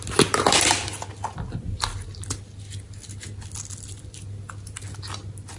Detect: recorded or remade recorded